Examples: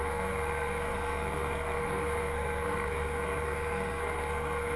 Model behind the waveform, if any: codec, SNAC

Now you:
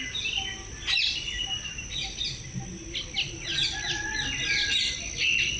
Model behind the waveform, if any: none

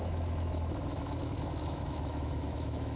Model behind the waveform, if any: autoencoder, DAC-VAE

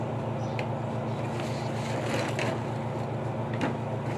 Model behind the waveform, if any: none